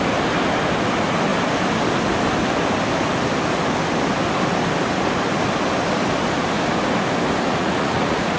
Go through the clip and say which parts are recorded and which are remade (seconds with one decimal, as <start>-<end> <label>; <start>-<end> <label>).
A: 0.0-7.5 recorded; 7.5-8.4 remade